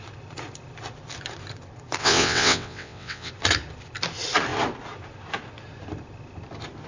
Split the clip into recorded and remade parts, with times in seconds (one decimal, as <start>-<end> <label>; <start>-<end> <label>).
0.0-2.0 recorded; 2.0-3.3 remade; 3.3-6.9 recorded